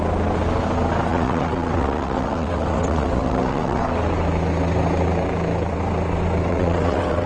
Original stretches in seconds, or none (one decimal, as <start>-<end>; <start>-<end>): 0.0-1.1; 3.8-6.5